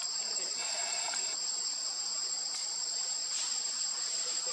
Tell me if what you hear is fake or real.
fake